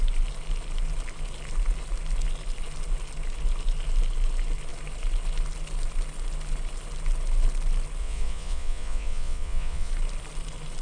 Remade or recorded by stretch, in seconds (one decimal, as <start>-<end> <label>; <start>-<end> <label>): 0.0-8.0 recorded; 8.0-9.9 remade; 9.9-10.8 recorded